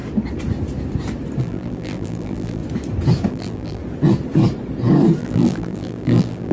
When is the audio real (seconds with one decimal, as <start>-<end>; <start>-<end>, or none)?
0.0-1.4; 2.6-3.3; 3.8-5.2

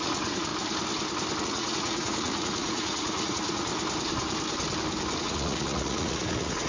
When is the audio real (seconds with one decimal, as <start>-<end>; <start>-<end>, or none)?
0.5-1.4; 3.7-5.2

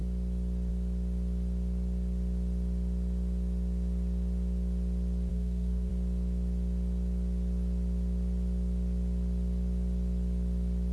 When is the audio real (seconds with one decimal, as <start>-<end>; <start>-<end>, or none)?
0.0-5.3; 5.9-10.9

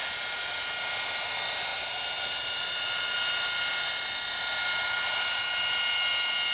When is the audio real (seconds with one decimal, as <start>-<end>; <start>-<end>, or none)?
0.0-6.5